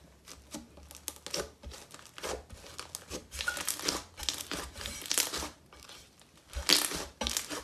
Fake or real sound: real